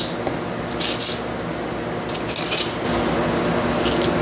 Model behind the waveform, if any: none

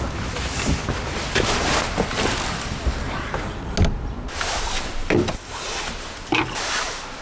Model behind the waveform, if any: none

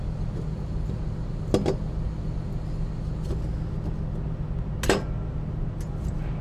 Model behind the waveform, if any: none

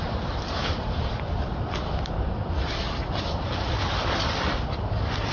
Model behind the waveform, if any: none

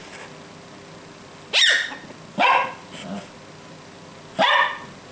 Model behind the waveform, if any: none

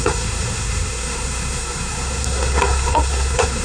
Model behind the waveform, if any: codec, SNAC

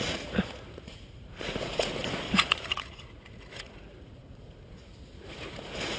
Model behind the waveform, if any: vocoder, Vocos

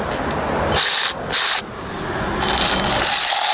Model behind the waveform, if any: none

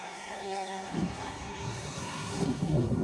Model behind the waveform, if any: codec, SNAC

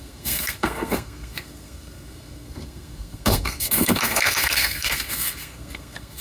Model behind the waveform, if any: codec, SNAC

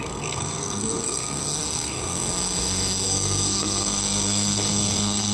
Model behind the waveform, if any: codec, SNAC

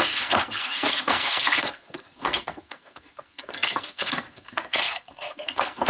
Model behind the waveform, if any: codec, SNAC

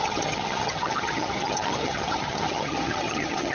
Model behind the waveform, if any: vocoder, HiFi-GAN